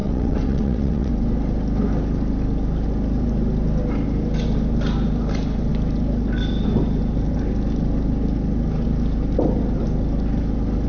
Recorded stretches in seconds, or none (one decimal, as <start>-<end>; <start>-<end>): 1.1-10.9